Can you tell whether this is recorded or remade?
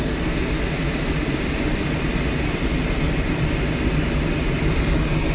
recorded